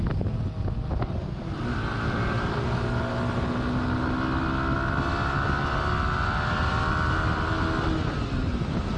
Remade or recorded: recorded